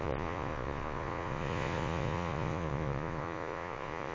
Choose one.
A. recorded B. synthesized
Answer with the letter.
B